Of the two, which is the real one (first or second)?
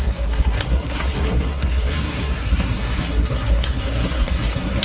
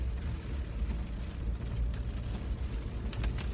second